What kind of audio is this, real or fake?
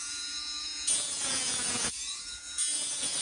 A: fake